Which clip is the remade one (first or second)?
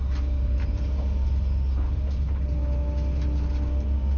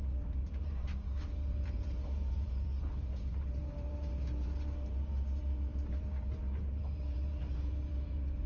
second